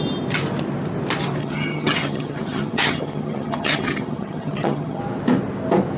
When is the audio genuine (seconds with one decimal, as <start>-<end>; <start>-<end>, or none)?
0.0-1.4; 5.0-6.0